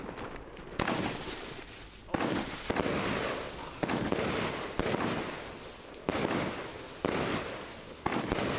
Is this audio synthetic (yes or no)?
no